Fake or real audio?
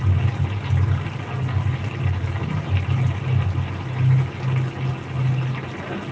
real